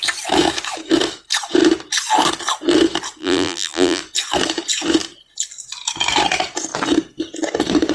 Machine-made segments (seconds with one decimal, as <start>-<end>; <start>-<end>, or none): 3.2-4.0

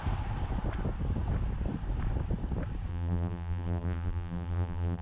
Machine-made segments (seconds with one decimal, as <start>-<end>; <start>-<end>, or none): 2.9-5.0

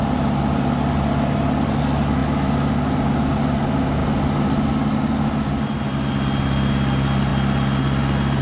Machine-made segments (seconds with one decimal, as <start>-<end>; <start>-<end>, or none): none

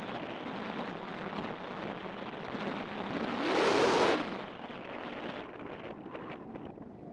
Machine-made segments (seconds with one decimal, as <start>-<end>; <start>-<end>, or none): none